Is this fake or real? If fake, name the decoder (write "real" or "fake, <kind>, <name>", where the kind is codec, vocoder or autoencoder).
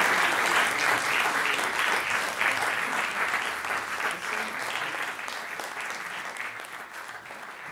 real